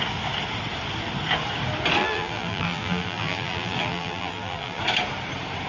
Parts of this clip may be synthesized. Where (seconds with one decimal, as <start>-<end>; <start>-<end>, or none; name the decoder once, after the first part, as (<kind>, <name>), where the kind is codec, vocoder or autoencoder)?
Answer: 2.0-4.8 (vocoder, BigVGAN v2)